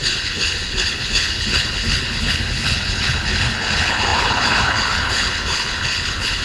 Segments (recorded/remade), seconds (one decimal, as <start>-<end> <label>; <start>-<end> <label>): 0.0-6.4 remade